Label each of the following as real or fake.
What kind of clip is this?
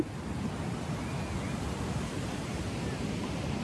real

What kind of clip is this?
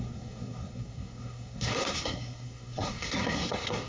fake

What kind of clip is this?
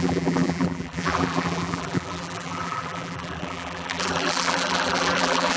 fake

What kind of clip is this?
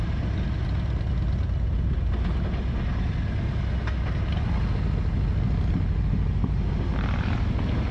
real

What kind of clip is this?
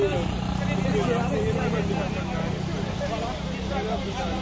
real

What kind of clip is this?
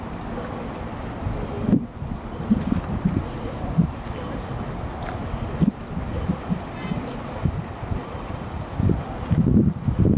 real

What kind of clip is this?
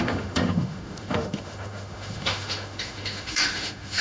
fake